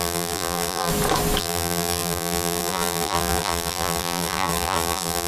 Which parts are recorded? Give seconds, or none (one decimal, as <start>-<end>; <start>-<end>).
0.9-1.4